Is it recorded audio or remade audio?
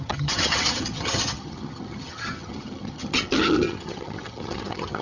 remade